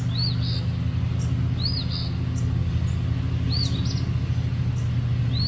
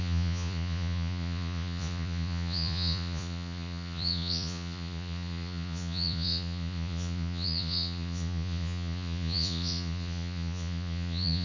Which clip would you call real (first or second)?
first